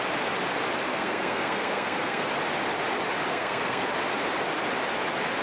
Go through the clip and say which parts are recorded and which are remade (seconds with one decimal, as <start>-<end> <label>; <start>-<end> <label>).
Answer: 0.0-0.9 recorded; 0.9-2.3 remade; 2.3-3.3 recorded; 3.3-3.8 remade; 3.8-5.4 recorded